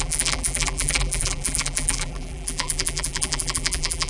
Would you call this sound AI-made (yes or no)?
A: yes